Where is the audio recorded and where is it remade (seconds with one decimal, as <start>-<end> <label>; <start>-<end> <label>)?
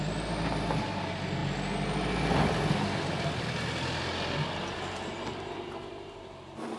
0.0-6.8 recorded